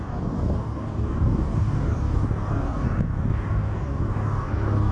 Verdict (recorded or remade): remade